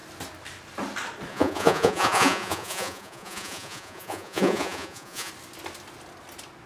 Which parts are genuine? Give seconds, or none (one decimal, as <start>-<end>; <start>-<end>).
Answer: 0.0-1.3; 5.3-6.7